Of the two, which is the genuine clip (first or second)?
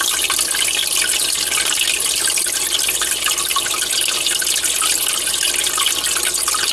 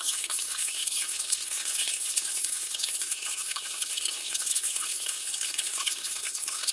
first